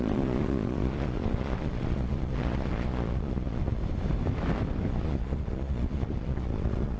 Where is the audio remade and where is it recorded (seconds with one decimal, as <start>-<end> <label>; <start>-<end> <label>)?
0.0-3.8 remade; 3.8-4.9 recorded; 4.9-7.0 remade